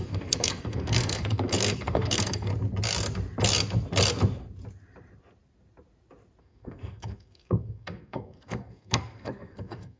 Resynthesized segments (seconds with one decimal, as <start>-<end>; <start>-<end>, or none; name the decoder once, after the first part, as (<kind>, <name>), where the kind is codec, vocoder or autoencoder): 0.0-2.5 (codec, SNAC); 6.4-10.0